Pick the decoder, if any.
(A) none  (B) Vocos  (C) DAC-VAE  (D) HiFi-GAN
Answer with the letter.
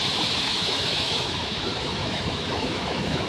C